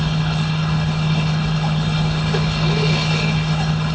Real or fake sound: fake